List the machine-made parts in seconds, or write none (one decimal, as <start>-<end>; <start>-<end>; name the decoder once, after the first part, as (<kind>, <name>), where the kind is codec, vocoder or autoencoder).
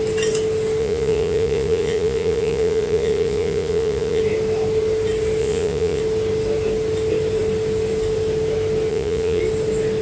0.8-4.2 (vocoder, Vocos); 5.4-6.0; 8.9-9.4